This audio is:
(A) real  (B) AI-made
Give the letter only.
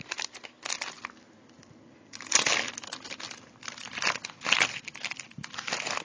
A